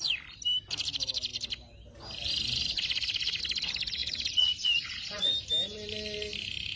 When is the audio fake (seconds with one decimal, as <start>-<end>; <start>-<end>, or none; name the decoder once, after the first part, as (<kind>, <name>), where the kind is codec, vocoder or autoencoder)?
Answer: 4.0-5.3 (vocoder, Vocos)